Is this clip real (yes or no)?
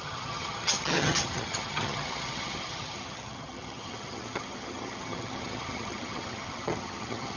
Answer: no